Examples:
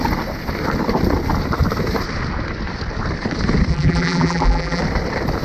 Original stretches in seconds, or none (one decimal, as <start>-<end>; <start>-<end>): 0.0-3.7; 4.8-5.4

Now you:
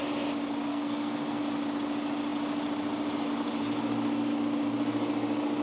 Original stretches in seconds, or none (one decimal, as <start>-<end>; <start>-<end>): 0.0-0.7; 1.4-5.6

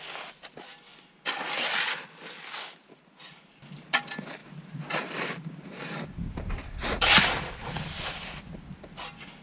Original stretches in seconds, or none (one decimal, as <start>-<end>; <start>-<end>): 0.0-9.4

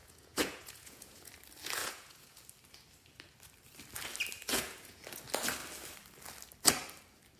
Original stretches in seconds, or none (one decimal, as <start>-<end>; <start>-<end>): 1.3-1.8; 2.4-4.5; 5.0-7.4

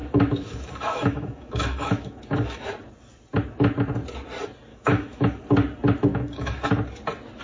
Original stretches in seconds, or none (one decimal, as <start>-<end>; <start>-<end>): 2.7-4.7; 5.4-6.1; 6.7-7.4